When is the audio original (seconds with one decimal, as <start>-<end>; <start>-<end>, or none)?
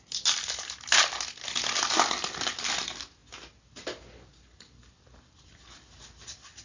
0.0-6.6